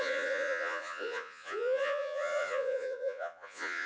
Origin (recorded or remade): remade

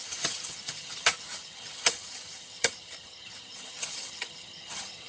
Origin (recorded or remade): remade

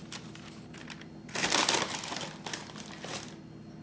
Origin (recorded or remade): recorded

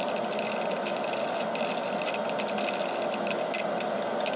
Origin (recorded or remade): recorded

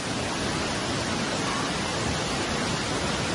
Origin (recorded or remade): recorded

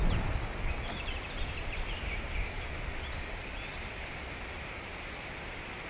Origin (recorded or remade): recorded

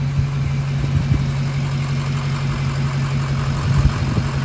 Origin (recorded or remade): recorded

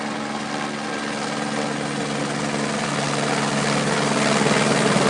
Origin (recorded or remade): recorded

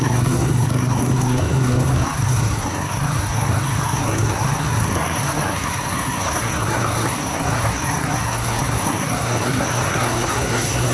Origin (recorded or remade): remade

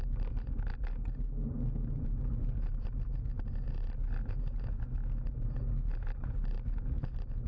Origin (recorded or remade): recorded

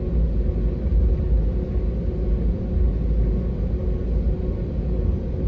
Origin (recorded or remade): recorded